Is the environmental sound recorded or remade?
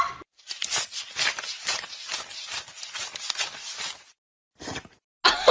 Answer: recorded